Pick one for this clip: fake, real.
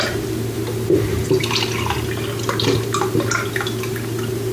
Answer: real